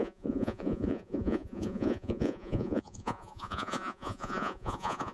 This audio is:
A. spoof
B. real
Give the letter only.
A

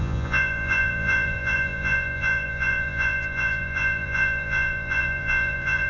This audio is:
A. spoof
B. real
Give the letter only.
A